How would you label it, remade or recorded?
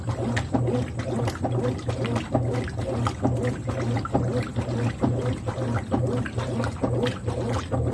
recorded